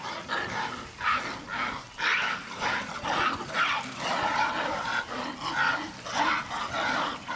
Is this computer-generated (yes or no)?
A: no